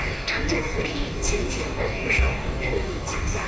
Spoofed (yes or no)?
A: yes